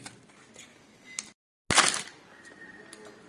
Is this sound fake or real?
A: real